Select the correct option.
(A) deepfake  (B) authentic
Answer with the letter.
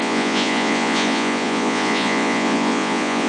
A